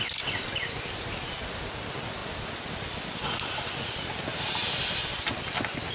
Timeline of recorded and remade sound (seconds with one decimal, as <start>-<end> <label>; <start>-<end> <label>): 0.0-5.9 recorded